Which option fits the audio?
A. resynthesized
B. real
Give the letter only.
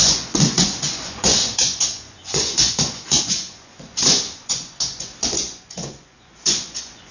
A